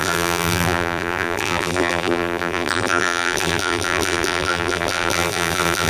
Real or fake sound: fake